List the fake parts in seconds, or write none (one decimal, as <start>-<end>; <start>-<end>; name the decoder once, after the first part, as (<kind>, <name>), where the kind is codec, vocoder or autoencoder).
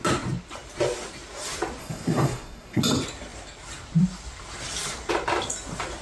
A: 1.8-2.8 (codec, SNAC)